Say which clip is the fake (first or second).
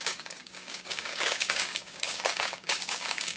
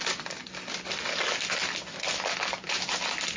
first